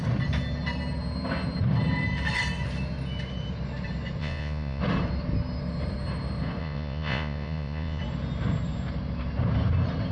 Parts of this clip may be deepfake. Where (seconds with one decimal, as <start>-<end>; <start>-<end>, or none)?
4.2-4.8; 6.6-8.0